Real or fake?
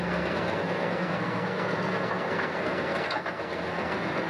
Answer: fake